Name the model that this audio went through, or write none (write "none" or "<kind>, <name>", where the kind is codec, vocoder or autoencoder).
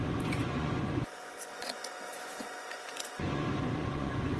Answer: vocoder, Vocos